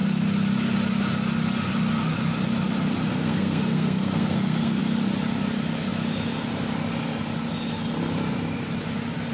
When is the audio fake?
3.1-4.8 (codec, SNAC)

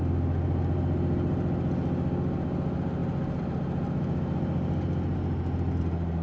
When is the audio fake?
none

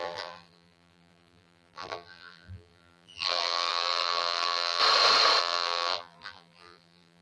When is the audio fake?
0.0-4.8 (vocoder, BigVGAN v2); 5.4-7.2

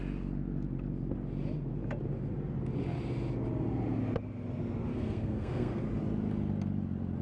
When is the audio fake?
4.9-5.8 (codec, SNAC)

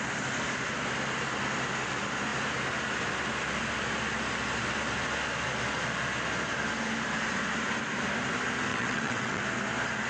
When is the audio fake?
8.7-9.4 (vocoder, WaveNeXt)

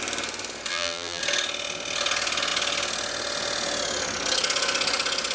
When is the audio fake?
0.7-1.2 (vocoder, BigVGAN v2)

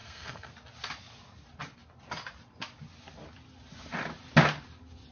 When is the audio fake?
0.0-0.5 (codec, SNAC)

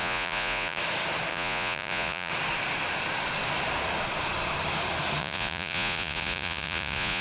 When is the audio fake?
0.0-0.8 (vocoder, Vocos); 1.3-2.3; 5.2-7.2